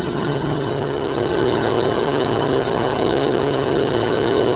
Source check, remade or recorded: remade